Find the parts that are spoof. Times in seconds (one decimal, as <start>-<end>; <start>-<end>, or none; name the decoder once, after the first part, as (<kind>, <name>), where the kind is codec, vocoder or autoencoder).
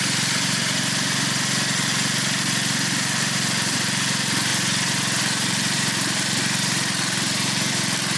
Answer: 0.0-4.5 (vocoder, BigVGAN v2); 5.2-8.2